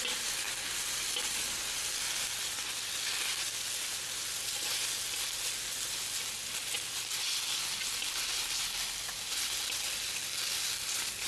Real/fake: real